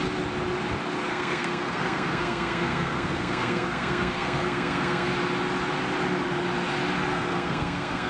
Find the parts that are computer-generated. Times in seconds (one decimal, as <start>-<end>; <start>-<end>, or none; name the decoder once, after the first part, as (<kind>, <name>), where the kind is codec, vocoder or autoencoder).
1.1-5.1 (codec, SNAC); 7.1-8.1